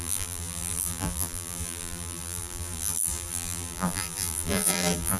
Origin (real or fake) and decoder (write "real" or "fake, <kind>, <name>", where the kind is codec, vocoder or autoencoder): fake, vocoder, BigVGAN v2